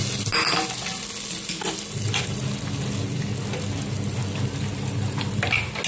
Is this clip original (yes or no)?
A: yes